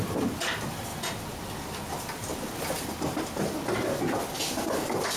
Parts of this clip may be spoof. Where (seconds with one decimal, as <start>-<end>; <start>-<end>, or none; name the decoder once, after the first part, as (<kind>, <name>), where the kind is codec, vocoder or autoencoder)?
none

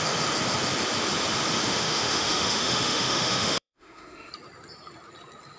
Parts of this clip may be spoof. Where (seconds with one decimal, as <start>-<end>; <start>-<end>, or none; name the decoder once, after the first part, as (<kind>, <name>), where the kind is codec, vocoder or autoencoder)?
1.5-4.3 (autoencoder, DAC-VAE)

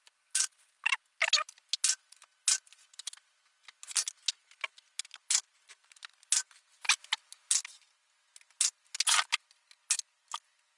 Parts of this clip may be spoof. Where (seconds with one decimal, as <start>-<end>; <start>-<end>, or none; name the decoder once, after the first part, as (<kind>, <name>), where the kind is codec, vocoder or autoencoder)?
none